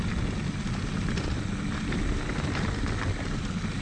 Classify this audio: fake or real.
real